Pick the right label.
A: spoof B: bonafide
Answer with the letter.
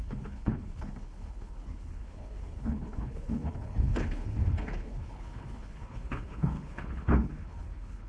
A